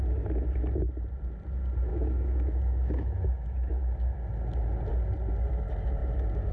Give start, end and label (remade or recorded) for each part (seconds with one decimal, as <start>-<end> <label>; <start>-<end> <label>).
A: 0.0-1.9 recorded; 1.9-3.7 remade; 3.7-6.5 recorded